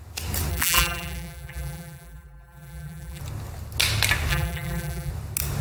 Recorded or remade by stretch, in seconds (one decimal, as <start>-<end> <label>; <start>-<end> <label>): 0.0-0.5 recorded; 0.5-3.2 remade; 3.2-4.3 recorded; 4.3-5.1 remade; 5.1-5.6 recorded